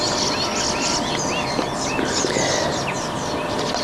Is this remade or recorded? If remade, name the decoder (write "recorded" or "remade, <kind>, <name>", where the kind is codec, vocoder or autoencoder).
recorded